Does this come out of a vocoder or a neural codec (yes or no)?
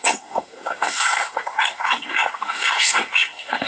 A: yes